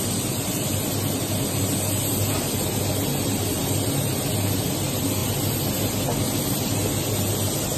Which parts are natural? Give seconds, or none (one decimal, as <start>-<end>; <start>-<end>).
0.0-5.2; 5.7-7.8

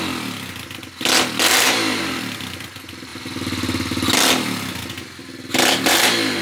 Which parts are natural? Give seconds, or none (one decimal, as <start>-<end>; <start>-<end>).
0.0-1.5; 2.2-6.4

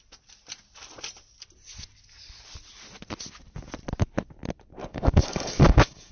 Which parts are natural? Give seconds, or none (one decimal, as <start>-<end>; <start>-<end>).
0.0-4.8

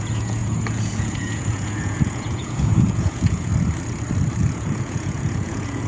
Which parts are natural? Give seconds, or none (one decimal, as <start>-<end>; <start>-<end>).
3.5-4.4

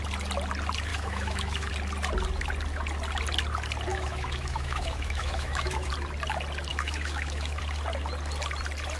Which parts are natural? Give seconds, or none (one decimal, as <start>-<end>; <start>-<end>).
0.0-0.9; 1.7-3.9; 5.9-6.7; 7.6-9.0

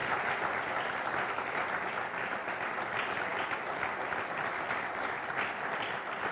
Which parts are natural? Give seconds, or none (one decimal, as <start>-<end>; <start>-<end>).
1.7-6.3